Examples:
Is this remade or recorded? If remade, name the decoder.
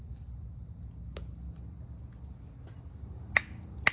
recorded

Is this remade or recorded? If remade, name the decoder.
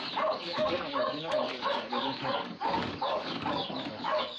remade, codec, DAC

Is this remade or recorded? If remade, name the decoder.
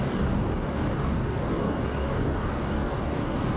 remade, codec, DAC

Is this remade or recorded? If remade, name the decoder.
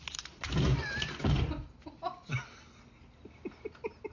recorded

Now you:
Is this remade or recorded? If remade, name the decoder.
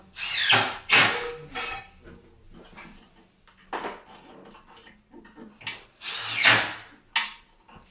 recorded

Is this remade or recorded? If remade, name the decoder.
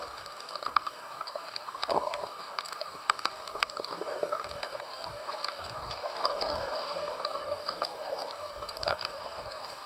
remade, codec, DAC